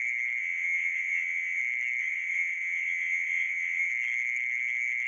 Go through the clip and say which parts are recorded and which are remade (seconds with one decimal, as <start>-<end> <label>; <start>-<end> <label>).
0.0-0.4 recorded; 0.4-1.6 remade; 1.6-2.0 recorded; 2.0-3.9 remade; 3.9-5.1 recorded